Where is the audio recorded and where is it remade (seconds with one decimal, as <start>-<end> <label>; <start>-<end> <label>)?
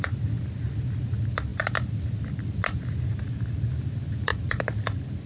0.0-5.3 recorded